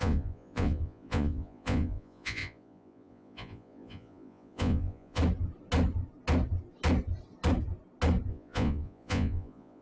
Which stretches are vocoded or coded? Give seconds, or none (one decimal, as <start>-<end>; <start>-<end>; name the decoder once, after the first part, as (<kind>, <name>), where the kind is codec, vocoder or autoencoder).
0.0-5.2 (vocoder, Vocos); 8.3-9.8